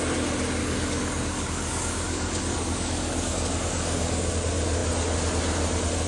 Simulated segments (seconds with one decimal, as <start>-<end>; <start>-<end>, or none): 0.6-4.3